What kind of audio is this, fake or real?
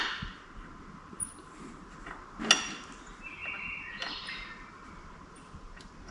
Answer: real